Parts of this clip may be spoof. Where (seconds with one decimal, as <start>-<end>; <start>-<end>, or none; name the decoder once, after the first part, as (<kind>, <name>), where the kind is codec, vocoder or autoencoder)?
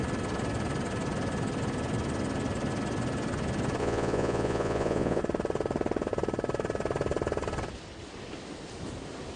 3.8-5.2 (vocoder, Vocos)